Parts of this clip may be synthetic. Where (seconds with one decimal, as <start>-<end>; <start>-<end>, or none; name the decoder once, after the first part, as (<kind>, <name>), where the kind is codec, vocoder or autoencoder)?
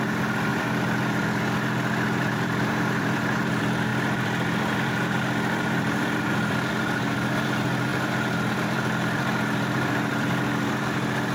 0.0-7.9 (vocoder, BigVGAN v2); 8.5-11.3